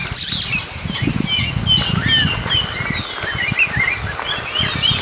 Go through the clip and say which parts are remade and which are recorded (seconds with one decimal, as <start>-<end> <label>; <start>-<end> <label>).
0.0-5.0 recorded